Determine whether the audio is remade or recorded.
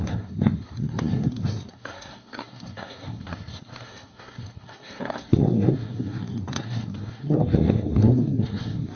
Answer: remade